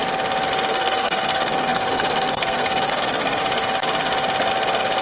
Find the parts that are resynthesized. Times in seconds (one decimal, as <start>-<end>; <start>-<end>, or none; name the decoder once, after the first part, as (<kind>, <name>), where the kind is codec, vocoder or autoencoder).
0.7-3.4 (codec, SNAC)